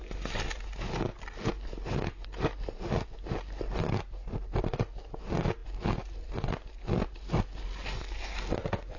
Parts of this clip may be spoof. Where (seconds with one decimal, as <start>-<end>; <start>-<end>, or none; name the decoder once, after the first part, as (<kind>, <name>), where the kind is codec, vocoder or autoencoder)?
none